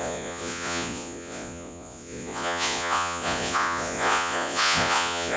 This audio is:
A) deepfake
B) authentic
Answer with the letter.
A